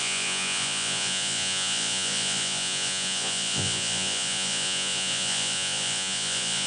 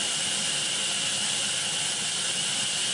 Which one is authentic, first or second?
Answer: second